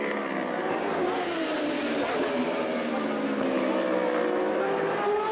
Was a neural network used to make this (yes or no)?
no